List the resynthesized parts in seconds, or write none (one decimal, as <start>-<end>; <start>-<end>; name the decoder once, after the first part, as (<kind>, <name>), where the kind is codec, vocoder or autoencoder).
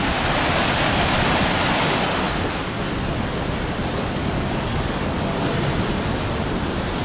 4.2-5.5 (codec, DAC)